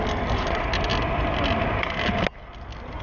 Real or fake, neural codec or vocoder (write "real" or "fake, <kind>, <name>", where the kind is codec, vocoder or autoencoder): real